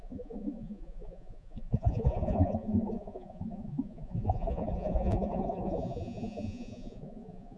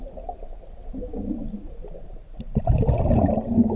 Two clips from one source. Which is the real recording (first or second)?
second